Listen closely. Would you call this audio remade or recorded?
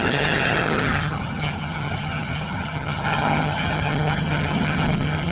remade